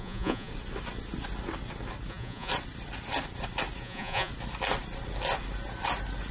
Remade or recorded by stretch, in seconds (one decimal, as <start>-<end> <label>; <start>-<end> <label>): 0.0-0.5 remade; 0.5-2.1 recorded; 2.1-2.5 remade; 2.5-3.8 recorded; 3.8-4.3 remade; 4.3-6.3 recorded